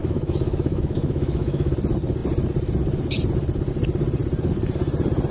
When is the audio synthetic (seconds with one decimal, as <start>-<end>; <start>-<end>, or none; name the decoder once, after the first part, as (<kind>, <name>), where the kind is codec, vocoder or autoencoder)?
0.0-1.7 (autoencoder, DAC-VAE)